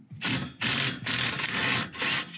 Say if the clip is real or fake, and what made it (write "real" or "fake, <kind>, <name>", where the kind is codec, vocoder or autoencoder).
real